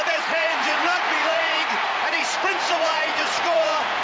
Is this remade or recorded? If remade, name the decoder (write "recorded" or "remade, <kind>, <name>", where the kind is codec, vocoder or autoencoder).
remade, vocoder, Vocos